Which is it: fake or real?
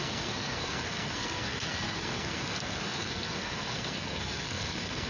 fake